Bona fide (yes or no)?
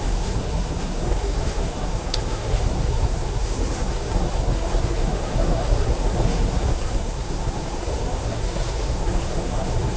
no